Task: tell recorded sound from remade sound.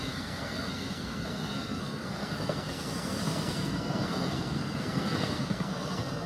remade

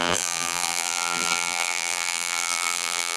remade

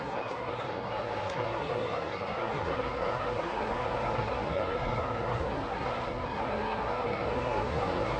remade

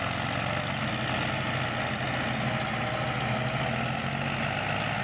recorded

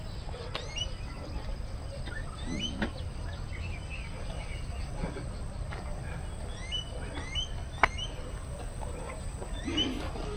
recorded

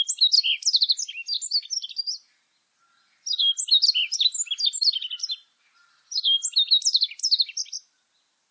recorded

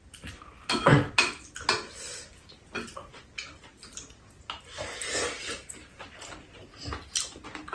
recorded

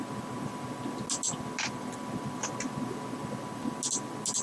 recorded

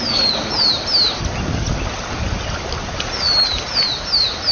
recorded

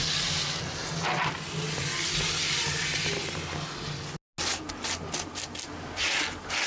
recorded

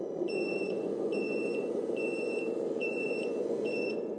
remade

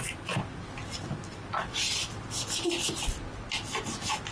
recorded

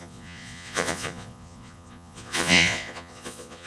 remade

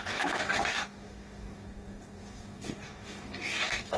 remade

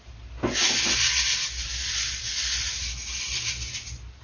recorded